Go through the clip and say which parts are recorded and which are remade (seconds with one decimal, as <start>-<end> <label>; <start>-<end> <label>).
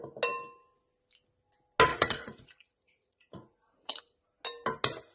0.0-1.9 recorded; 1.9-4.0 remade; 4.0-5.1 recorded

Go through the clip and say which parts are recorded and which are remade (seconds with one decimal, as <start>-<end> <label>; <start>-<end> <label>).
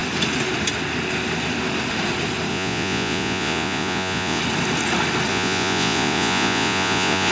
0.0-2.5 recorded; 2.5-4.4 remade; 4.4-5.3 recorded; 5.3-7.3 remade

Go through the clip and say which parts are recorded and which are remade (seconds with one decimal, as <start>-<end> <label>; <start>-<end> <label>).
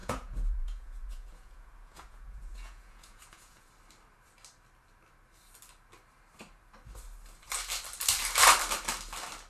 0.0-3.7 remade; 3.7-9.5 recorded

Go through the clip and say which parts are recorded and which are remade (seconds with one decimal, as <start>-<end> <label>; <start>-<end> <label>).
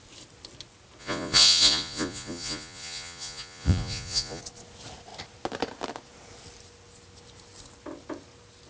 0.0-1.0 recorded; 1.0-4.4 remade; 4.4-8.7 recorded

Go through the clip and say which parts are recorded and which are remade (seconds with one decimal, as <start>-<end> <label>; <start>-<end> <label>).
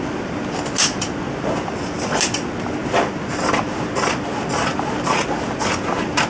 0.0-6.3 recorded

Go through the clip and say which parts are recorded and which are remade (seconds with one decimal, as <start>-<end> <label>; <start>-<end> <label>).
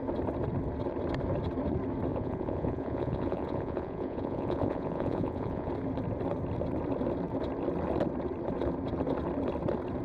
0.0-2.1 recorded; 2.1-5.7 remade; 5.7-10.0 recorded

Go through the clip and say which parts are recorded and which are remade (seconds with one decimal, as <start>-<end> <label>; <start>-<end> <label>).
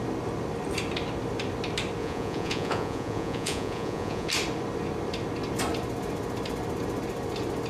0.0-2.0 recorded; 2.0-4.3 remade; 4.3-7.7 recorded